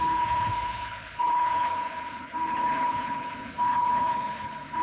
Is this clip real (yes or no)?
no